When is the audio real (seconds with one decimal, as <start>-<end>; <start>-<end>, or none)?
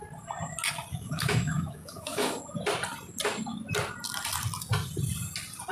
0.0-0.9; 2.4-5.7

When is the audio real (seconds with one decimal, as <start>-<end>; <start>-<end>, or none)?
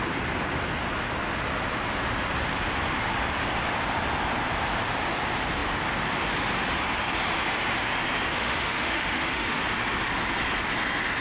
0.0-8.3; 9.6-11.2